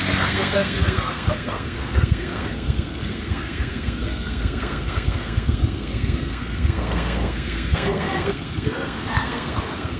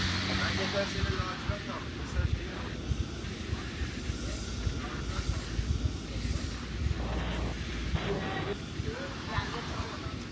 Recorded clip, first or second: second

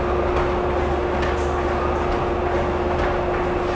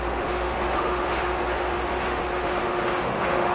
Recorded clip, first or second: first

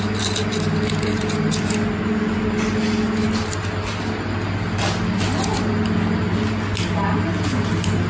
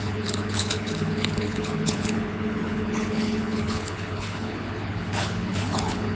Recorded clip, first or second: first